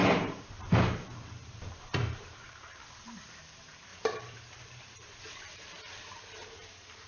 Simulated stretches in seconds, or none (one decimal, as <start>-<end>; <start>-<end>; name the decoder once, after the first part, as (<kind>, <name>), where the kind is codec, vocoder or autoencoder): 0.0-7.1 (vocoder, BigVGAN v2)